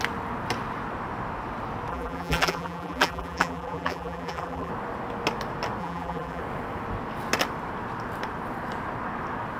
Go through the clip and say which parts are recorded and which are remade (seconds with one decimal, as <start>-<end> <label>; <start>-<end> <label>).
0.0-1.9 recorded; 1.9-4.7 remade; 4.7-5.8 recorded; 5.8-6.4 remade; 6.4-9.6 recorded